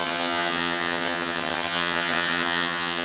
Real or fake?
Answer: fake